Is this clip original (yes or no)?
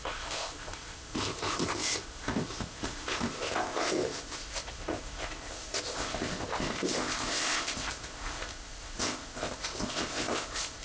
no